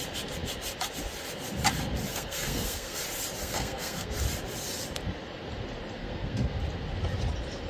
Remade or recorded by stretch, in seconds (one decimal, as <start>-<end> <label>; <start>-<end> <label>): 0.0-2.1 recorded; 2.1-3.0 remade; 3.0-3.4 recorded; 3.4-4.1 remade; 4.1-6.0 recorded; 6.0-6.6 remade; 6.6-7.7 recorded